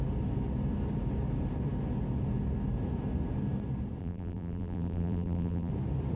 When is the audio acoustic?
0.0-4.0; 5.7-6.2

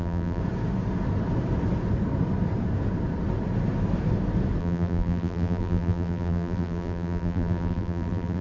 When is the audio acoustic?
0.4-4.6

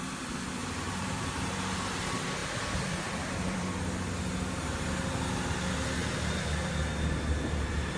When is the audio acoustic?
0.0-0.6; 1.8-2.4; 3.7-6.0; 6.5-8.0

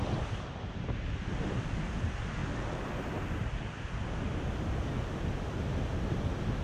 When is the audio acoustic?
0.0-6.6

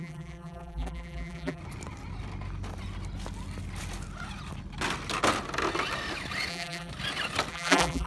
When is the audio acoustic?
1.6-6.5; 6.9-7.5

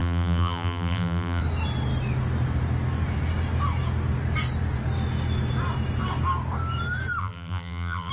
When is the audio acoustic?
1.4-7.2

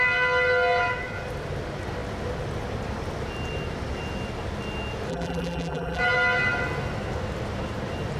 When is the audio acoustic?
0.0-5.1; 6.0-8.2

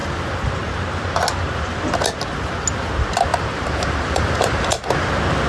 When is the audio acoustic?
0.0-3.3; 4.6-5.5